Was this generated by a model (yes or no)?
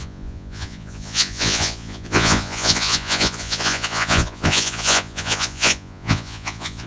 yes